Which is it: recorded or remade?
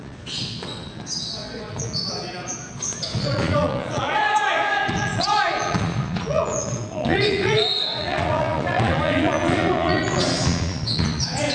remade